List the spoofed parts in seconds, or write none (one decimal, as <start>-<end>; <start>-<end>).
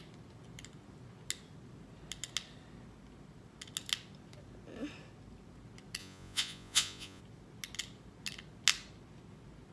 6.0-7.2